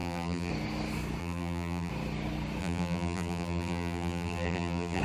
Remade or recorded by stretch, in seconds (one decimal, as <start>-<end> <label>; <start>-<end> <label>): 0.0-0.5 remade; 0.5-1.2 recorded; 1.2-1.9 remade; 1.9-2.6 recorded; 2.6-5.0 remade